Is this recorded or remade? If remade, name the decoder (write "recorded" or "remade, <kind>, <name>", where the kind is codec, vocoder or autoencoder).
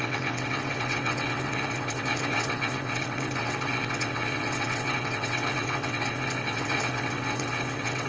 remade, vocoder, WaveNeXt